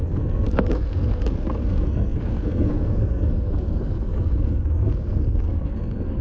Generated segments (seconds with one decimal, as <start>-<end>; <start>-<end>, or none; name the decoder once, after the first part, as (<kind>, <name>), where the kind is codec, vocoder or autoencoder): 0.0-6.2 (codec, SNAC)